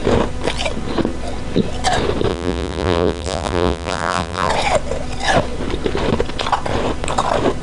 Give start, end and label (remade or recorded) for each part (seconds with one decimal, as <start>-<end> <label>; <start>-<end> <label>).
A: 0.0-2.3 recorded; 2.3-4.5 remade; 4.5-7.6 recorded